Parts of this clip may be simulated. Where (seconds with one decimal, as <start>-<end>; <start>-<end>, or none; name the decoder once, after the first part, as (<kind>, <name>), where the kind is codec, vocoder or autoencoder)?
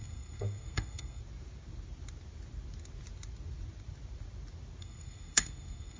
0.0-1.2 (codec, SNAC); 4.8-6.0